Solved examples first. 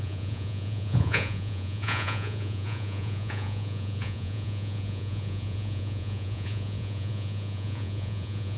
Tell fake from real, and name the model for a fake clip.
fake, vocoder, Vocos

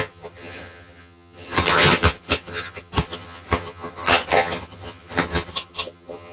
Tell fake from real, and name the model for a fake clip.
fake, vocoder, HiFi-GAN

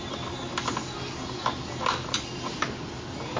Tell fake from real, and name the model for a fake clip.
real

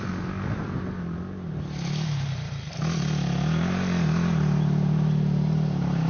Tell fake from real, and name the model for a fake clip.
real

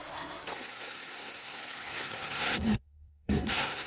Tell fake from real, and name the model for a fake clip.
fake, codec, SNAC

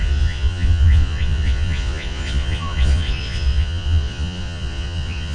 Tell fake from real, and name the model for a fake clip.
fake, vocoder, Vocos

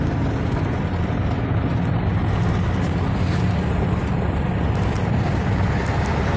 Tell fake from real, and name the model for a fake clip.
real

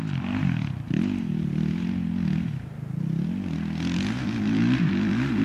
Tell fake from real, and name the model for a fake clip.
real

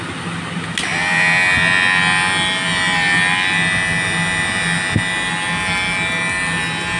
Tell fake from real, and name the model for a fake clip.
real